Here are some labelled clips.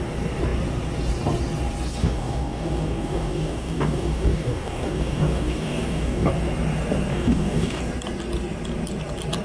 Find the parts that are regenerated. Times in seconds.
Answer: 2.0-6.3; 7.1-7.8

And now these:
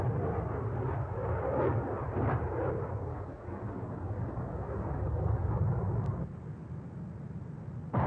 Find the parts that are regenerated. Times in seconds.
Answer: 3.1-5.6

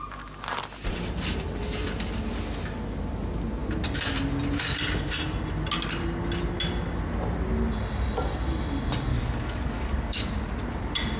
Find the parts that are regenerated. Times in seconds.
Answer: 9.1-10.3

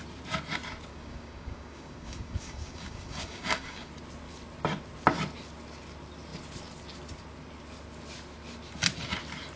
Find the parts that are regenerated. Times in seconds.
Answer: 0.9-3.9

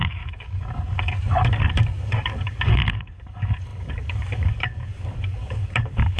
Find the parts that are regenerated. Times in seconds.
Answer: 0.0-6.2